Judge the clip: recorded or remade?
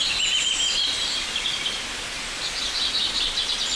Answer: recorded